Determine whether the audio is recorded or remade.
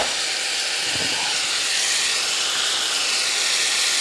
recorded